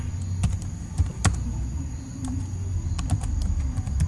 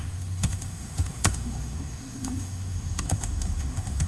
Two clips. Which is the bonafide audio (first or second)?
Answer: first